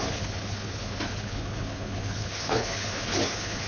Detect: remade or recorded remade